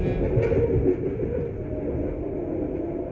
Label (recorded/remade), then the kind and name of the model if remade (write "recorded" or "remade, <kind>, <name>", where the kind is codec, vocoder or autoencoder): recorded